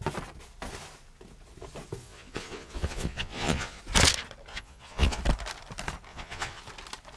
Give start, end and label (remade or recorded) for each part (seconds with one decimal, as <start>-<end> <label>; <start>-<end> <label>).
0.0-2.0 recorded; 2.0-3.8 remade; 3.8-4.5 recorded; 4.5-5.2 remade; 5.2-6.1 recorded; 6.1-6.6 remade; 6.6-7.2 recorded